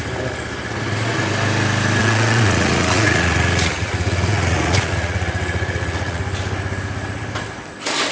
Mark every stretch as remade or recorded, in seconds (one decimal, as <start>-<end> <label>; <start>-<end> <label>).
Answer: 0.0-2.0 recorded; 2.0-6.2 remade; 6.2-8.1 recorded